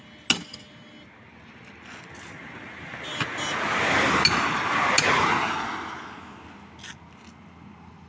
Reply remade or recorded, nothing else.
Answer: recorded